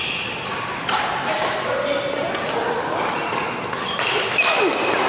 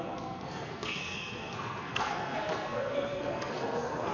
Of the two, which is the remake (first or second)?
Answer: second